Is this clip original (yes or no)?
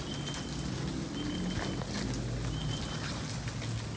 yes